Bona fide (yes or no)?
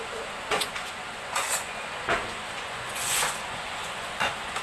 no